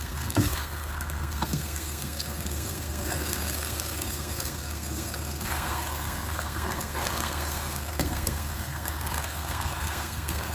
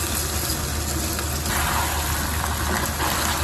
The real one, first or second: second